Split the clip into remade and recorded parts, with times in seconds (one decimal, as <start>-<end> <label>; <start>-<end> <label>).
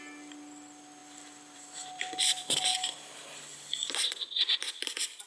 0.0-1.0 recorded; 1.0-2.6 remade; 2.6-3.5 recorded; 3.5-4.5 remade; 4.5-5.3 recorded